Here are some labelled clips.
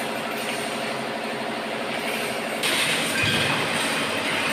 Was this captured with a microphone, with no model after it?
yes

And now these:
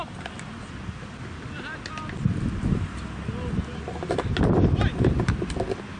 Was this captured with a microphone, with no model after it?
yes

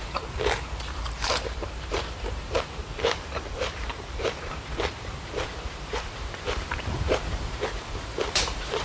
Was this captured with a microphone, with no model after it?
no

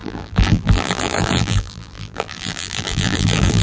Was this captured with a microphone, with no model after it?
no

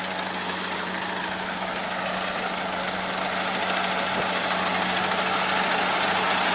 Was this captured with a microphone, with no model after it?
yes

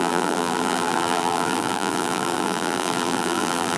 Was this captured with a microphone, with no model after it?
no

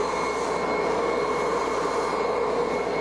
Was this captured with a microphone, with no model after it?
yes